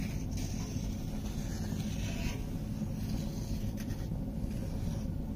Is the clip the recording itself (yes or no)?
yes